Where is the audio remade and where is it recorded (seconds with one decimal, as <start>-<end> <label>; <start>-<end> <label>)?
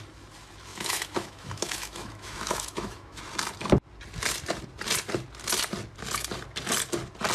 0.0-0.7 recorded; 0.7-3.2 remade; 3.2-7.3 recorded